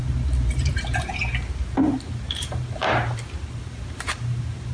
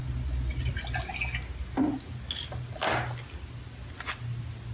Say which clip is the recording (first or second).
second